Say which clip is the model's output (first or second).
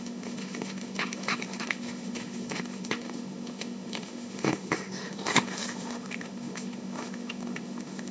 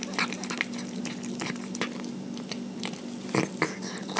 first